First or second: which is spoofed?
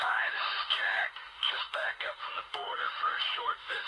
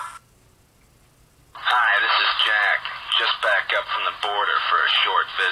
first